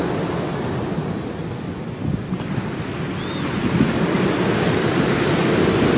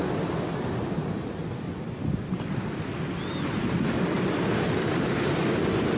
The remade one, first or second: second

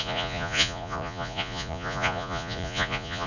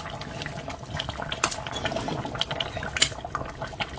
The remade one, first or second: first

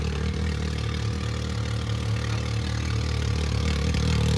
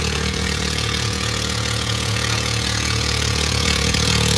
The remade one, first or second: second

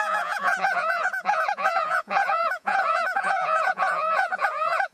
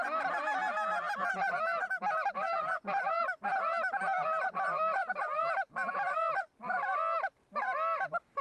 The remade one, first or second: first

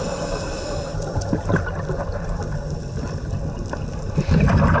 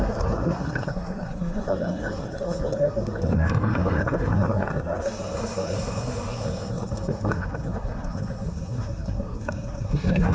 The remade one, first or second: second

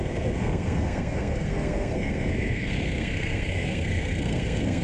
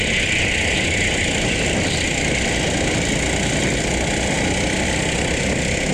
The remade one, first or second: first